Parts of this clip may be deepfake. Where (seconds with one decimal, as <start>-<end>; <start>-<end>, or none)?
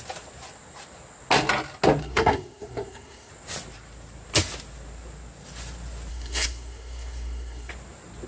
2.0-3.3; 6.1-7.7